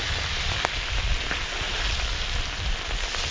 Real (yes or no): yes